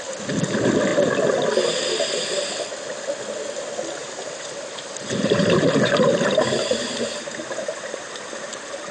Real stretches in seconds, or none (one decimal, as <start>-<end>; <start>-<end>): 0.0-4.0